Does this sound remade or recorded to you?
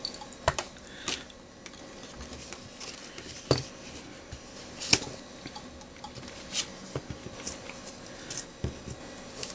recorded